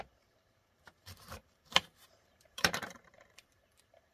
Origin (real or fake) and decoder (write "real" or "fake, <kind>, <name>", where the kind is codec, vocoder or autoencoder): fake, vocoder, BigVGAN v2